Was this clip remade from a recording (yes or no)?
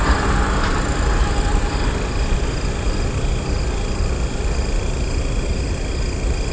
no